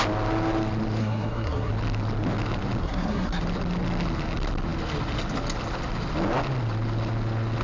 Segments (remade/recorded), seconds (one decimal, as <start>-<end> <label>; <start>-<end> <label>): 0.0-1.0 recorded; 1.0-1.7 remade; 1.7-2.8 recorded; 2.8-3.4 remade; 3.4-7.6 recorded